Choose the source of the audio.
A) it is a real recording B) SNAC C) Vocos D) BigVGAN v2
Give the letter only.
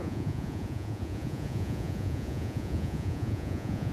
C